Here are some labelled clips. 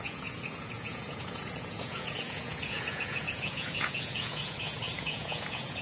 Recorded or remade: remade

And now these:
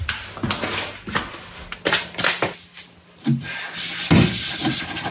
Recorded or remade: recorded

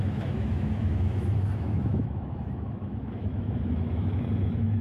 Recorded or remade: remade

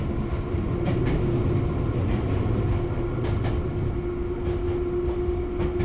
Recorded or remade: recorded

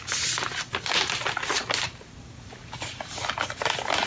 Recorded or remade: recorded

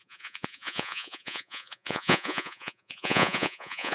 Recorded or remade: remade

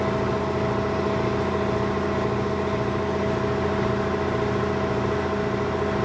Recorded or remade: recorded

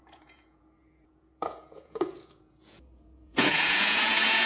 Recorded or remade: remade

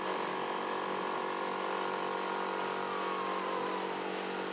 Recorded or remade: recorded